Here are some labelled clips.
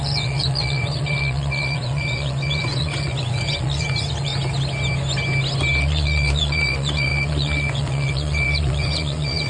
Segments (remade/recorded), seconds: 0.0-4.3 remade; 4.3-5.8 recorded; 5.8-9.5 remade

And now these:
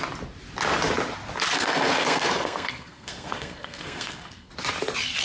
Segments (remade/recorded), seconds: 0.0-1.5 recorded; 1.5-4.5 remade; 4.5-5.2 recorded

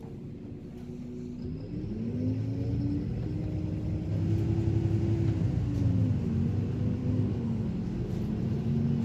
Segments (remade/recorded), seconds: 0.0-7.0 recorded; 7.0-8.1 remade; 8.1-9.0 recorded

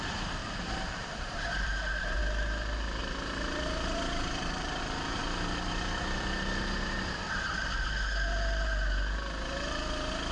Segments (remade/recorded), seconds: 0.0-0.4 recorded; 0.4-2.2 remade; 2.2-3.0 recorded; 3.0-4.8 remade; 4.8-10.3 recorded